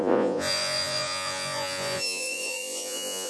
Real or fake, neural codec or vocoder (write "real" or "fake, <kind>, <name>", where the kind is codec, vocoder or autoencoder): fake, vocoder, Vocos